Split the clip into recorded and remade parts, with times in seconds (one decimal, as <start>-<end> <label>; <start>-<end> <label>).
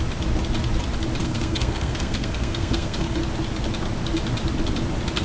0.0-1.2 recorded; 1.2-3.2 remade; 3.2-5.2 recorded